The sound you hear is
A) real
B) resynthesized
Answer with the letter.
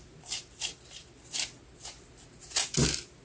A